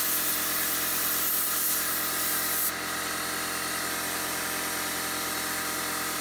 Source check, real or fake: real